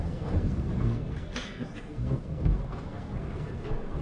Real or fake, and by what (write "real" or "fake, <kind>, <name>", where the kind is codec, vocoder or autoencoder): fake, codec, SNAC